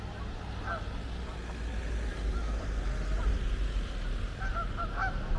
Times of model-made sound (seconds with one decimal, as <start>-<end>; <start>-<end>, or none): 2.1-5.4